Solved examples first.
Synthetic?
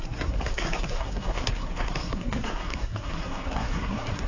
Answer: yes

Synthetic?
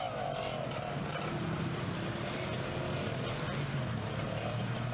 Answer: no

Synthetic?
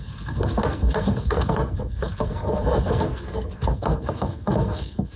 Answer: yes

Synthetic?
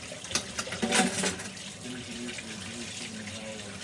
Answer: no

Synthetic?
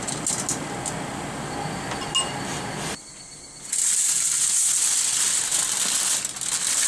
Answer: no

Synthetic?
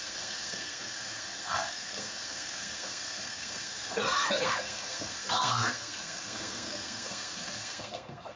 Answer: yes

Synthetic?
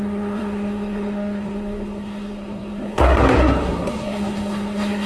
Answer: yes